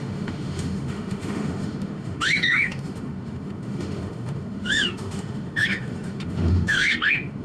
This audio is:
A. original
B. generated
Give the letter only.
B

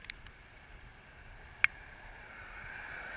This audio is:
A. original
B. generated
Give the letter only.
A